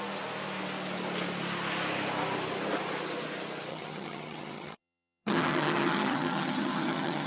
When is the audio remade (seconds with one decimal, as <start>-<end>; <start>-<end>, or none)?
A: 3.7-7.3